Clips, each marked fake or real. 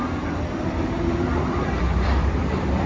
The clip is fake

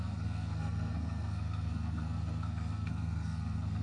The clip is fake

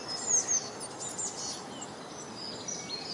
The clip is real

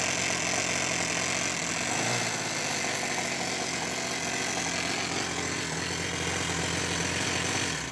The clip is real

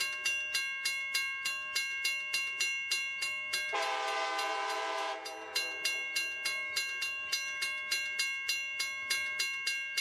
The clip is real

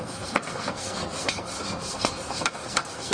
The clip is fake